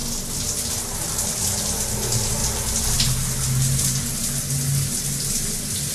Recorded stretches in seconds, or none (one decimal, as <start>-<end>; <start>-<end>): 0.0-5.9